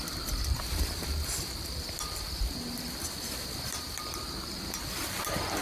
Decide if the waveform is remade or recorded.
remade